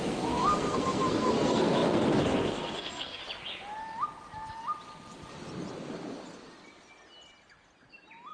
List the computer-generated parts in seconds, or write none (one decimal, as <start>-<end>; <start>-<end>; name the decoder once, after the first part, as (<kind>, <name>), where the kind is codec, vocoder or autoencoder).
0.0-3.2 (codec, SNAC)